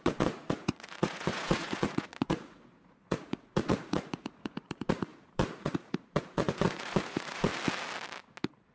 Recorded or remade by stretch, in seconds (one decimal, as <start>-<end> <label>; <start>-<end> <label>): 0.0-7.5 remade; 7.5-8.7 recorded